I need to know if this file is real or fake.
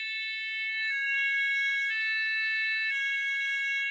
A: fake